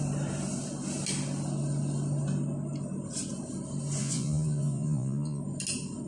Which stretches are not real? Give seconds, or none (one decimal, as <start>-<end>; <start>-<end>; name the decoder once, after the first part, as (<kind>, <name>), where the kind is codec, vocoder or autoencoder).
4.0-5.4 (vocoder, Vocos)